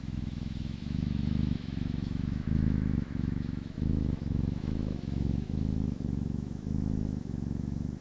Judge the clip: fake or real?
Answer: fake